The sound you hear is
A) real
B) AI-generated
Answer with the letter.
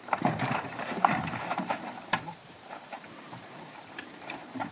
B